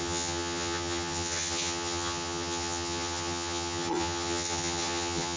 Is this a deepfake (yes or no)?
yes